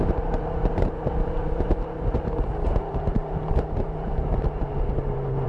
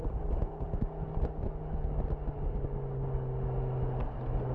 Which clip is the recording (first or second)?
second